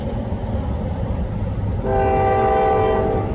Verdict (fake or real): real